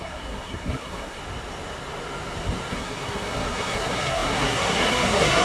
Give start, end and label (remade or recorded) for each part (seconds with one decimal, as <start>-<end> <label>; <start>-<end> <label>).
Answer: 0.0-1.2 remade; 1.2-2.7 recorded; 2.7-5.4 remade